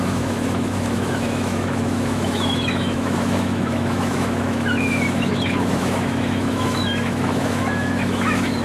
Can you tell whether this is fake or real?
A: fake